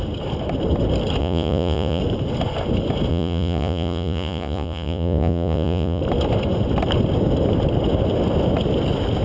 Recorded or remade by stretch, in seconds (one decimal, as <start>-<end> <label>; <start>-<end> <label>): 0.0-1.2 recorded; 1.2-2.0 remade; 2.0-3.1 recorded; 3.1-6.0 remade; 6.0-9.2 recorded